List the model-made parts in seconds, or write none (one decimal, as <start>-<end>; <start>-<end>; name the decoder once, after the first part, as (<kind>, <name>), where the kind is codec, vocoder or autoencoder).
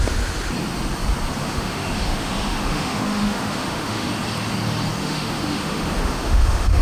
1.4-4.1 (autoencoder, DAC-VAE); 5.0-6.8